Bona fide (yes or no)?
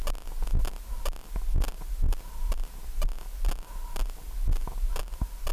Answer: yes